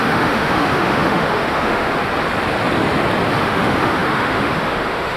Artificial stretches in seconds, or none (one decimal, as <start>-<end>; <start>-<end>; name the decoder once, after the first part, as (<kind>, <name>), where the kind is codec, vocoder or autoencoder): 0.0-2.0 (autoencoder, DAC-VAE); 3.4-5.2